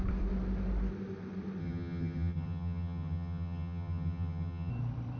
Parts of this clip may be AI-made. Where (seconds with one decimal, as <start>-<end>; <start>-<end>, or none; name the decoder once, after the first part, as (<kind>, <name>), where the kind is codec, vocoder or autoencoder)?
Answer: 1.6-4.7 (vocoder, HiFi-GAN)